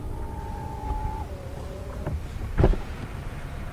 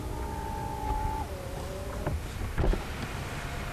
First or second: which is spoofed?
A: first